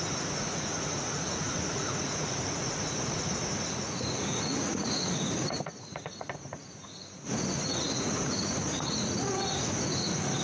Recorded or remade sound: remade